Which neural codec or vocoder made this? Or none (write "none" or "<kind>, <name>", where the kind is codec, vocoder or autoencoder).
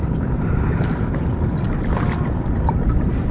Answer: none